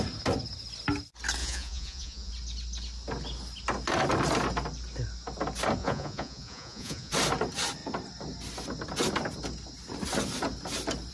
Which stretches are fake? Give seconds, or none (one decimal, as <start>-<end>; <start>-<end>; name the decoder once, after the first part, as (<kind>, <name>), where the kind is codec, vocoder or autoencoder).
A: 1.4-2.3 (vocoder, Vocos); 5.8-7.1